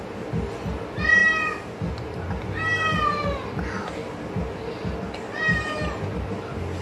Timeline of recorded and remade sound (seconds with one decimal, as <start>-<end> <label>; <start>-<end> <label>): 0.0-6.8 recorded